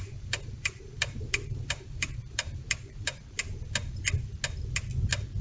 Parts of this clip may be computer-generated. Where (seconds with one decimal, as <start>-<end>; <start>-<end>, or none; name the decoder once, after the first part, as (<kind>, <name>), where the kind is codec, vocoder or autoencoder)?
0.0-3.2 (vocoder, BigVGAN v2)